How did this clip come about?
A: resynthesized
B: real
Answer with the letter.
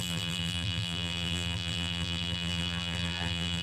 A